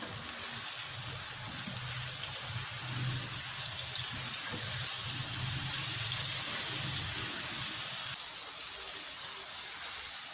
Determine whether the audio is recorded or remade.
recorded